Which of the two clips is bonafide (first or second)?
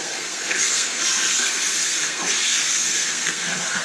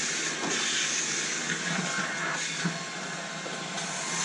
second